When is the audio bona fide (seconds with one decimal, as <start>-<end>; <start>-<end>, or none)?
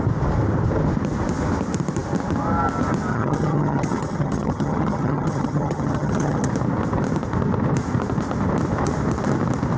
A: 0.0-3.1; 6.5-9.8